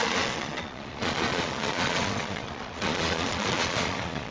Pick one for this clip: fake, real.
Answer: fake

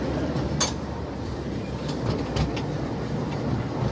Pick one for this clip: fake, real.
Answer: real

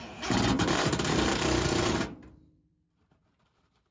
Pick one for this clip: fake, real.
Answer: fake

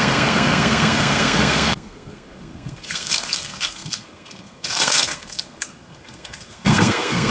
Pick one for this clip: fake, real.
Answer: fake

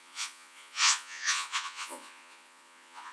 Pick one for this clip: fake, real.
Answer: fake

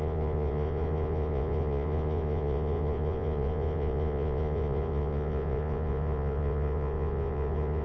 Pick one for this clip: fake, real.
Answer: fake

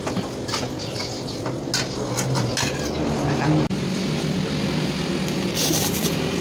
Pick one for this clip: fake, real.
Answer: real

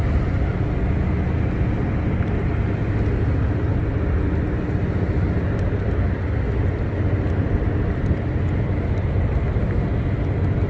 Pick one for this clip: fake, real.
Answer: real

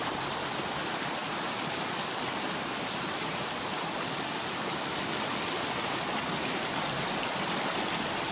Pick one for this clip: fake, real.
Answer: real